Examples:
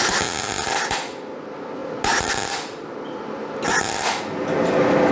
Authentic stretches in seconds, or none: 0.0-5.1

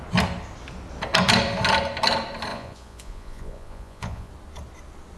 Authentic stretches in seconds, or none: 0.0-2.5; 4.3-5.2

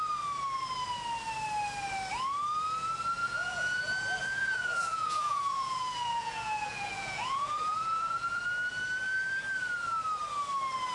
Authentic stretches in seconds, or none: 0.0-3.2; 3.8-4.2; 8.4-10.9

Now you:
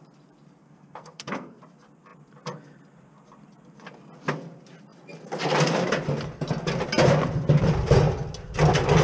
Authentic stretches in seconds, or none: 0.0-0.6; 1.6-9.0

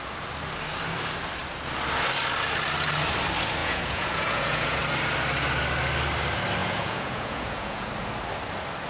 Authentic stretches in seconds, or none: 0.0-3.6; 4.8-6.6; 7.9-8.9